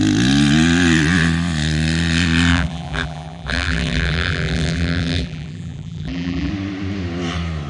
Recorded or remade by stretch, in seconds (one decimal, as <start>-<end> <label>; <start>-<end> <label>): 0.0-2.5 recorded; 2.5-6.5 remade; 6.5-7.7 recorded